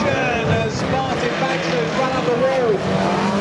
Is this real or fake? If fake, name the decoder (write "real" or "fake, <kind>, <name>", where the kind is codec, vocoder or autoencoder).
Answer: real